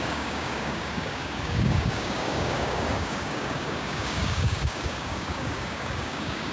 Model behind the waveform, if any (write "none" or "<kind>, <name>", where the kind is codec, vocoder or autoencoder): codec, DAC